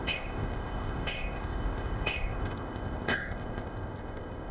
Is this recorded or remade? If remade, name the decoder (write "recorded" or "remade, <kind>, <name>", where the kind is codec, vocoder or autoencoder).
remade, codec, ZipCodec